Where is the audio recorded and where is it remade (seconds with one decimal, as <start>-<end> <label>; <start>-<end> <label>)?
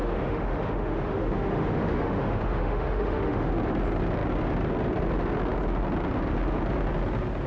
0.0-3.5 remade; 3.5-7.5 recorded